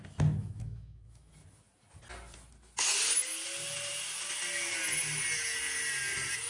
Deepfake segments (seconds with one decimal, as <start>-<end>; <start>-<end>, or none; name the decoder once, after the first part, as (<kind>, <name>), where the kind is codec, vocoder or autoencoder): 0.4-1.3 (autoencoder, DAC-VAE)